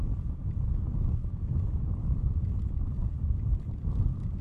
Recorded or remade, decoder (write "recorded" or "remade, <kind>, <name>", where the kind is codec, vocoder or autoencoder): recorded